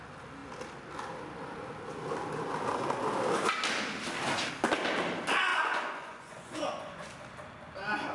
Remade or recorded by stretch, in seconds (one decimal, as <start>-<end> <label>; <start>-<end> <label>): 0.0-5.5 recorded; 5.5-7.1 remade; 7.1-8.1 recorded